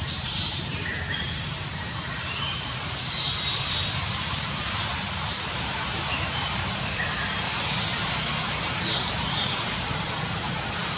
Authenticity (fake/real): fake